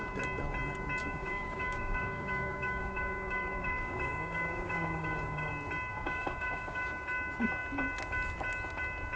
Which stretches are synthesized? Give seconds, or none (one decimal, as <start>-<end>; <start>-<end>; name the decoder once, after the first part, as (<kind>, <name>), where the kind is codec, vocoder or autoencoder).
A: 1.0-5.5 (codec, DAC); 5.9-6.9